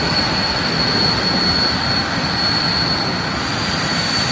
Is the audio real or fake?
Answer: real